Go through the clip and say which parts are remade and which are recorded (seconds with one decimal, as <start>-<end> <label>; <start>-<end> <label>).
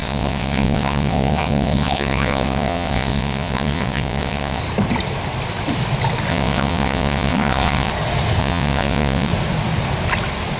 0.0-4.6 remade; 4.6-6.3 recorded; 6.3-7.9 remade; 7.9-8.4 recorded; 8.4-9.3 remade; 9.3-10.6 recorded